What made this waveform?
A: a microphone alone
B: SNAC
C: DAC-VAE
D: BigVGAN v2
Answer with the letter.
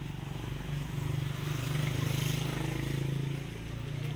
A